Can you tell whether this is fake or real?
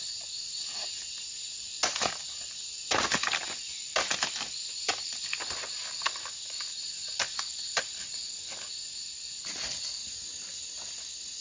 real